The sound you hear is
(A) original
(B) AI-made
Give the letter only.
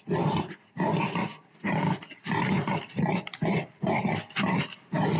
A